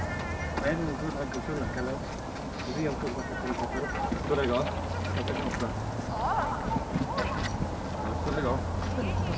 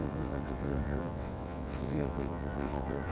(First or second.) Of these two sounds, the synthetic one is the second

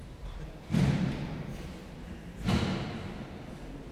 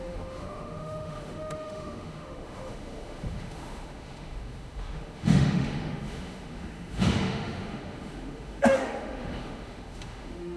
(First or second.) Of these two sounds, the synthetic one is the second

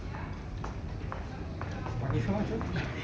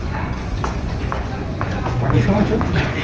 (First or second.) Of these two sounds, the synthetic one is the second